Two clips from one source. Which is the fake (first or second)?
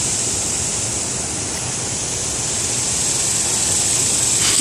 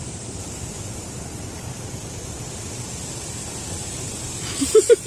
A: second